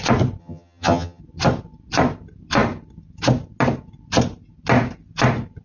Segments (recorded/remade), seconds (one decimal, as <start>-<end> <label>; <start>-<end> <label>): 0.0-0.4 recorded; 0.4-1.2 remade; 1.2-5.6 recorded